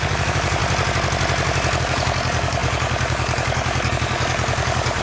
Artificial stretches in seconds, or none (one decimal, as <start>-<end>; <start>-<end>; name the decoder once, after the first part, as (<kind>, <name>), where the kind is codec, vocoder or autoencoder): 0.0-0.6 (codec, DAC); 1.8-5.0

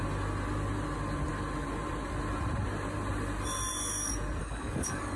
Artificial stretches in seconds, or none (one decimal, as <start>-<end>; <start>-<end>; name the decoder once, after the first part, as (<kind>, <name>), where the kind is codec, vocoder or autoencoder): 4.4-5.2 (codec, DAC)

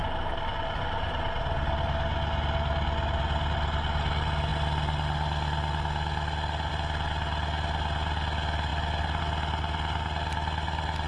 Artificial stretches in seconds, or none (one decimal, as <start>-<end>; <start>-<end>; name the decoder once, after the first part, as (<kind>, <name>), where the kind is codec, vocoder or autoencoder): none

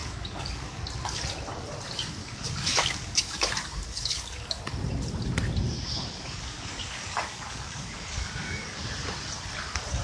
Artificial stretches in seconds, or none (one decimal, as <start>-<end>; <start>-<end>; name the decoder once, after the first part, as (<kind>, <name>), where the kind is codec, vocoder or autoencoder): 0.0-0.8 (codec, DAC); 2.2-4.6; 6.0-8.8

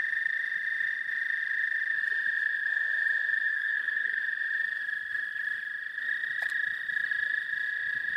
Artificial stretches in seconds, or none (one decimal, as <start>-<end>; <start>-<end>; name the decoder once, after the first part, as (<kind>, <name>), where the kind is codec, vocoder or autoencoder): 3.5-4.2 (codec, DAC)

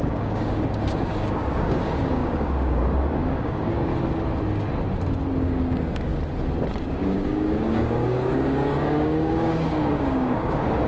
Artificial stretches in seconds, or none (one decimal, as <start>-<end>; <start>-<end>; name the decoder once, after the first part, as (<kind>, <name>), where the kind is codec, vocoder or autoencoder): 0.0-3.9 (codec, DAC); 5.3-6.1; 6.8-10.9

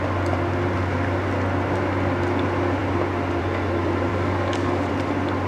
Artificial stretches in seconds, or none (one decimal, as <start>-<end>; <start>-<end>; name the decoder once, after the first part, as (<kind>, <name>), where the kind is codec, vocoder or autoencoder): 4.1-4.9 (codec, DAC)

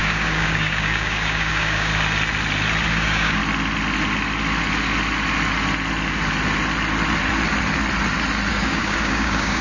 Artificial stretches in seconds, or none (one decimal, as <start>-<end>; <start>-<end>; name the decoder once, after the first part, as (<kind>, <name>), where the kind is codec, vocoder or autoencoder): 0.0-1.9 (codec, DAC); 2.9-3.4; 8.5-9.6